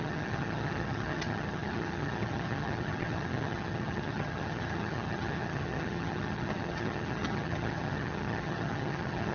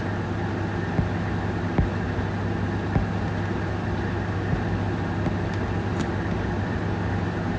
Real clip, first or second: second